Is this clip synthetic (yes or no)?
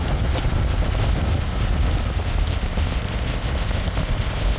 no